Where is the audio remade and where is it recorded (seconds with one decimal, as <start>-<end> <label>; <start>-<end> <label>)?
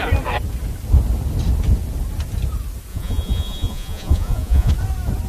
0.0-2.9 recorded; 2.9-4.7 remade; 4.7-5.3 recorded